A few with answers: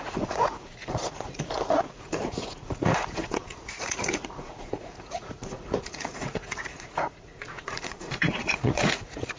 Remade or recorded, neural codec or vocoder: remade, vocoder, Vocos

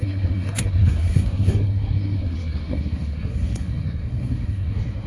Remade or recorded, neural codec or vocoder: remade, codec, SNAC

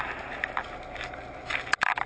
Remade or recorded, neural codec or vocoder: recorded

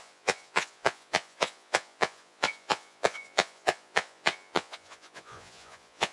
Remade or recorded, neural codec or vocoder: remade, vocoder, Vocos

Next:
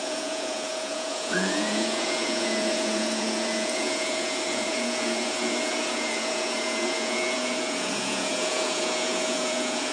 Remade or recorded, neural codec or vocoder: remade, vocoder, Vocos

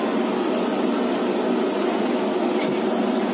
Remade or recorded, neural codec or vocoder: recorded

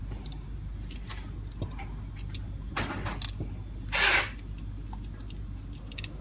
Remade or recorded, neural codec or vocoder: recorded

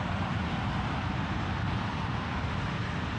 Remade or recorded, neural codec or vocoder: recorded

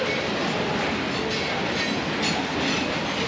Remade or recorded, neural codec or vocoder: recorded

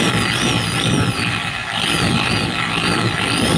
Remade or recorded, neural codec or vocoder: remade, vocoder, BigVGAN v2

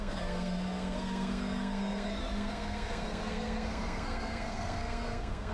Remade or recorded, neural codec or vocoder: remade, codec, SNAC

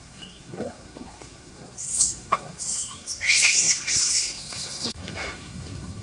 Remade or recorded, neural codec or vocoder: remade, codec, SNAC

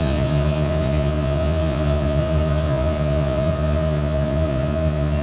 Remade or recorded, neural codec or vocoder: remade, vocoder, Vocos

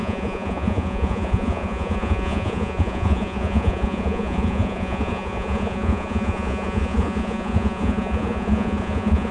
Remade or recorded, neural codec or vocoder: remade, vocoder, Vocos